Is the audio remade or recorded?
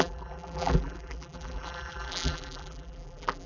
remade